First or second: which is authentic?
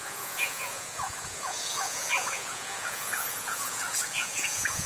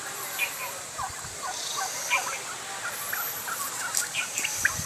second